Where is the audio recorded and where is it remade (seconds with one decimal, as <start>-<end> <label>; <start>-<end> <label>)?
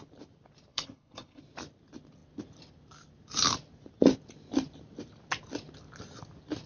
0.0-0.7 recorded; 0.7-1.4 remade; 1.4-6.7 recorded